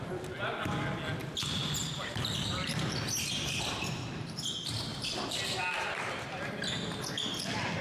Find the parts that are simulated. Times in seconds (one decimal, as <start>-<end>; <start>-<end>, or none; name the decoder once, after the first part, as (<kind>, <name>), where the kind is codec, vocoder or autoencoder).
1.2-4.4 (vocoder, BigVGAN v2); 4.9-6.4